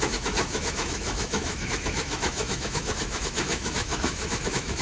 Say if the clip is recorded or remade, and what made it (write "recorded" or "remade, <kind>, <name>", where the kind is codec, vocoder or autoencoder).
remade, autoencoder, DAC-VAE